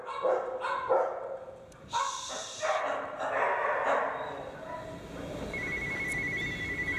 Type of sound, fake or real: real